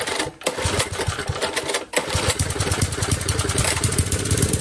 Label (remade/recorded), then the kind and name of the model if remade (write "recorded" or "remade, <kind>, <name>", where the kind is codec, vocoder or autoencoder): remade, vocoder, BigVGAN v2